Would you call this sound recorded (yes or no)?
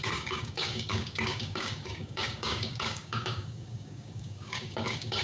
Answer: no